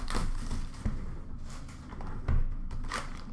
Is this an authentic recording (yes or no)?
yes